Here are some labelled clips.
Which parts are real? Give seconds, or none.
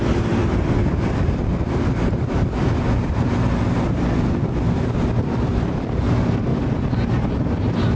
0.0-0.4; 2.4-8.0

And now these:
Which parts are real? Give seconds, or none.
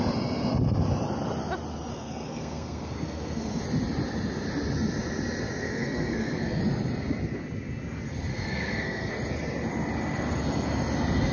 0.0-1.9; 3.6-5.6; 6.6-8.3; 9.1-11.3